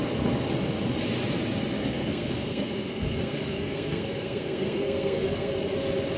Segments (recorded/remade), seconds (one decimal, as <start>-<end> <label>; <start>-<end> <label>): 0.0-1.8 recorded; 1.8-5.5 remade; 5.5-6.2 recorded